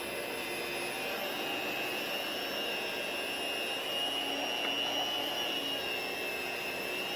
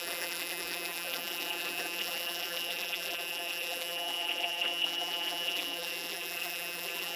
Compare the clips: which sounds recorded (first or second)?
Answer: first